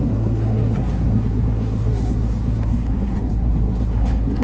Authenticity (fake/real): fake